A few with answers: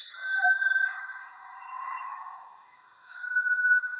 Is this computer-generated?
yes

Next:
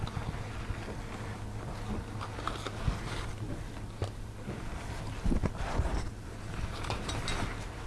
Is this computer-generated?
no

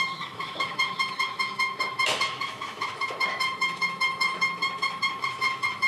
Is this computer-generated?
yes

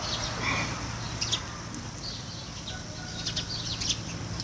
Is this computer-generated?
no